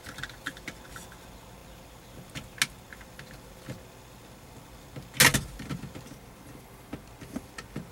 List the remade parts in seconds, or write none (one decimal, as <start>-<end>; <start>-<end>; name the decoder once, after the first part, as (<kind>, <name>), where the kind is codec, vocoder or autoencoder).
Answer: none